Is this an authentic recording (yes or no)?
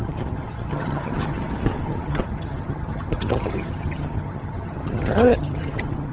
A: no